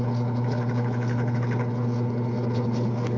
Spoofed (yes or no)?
yes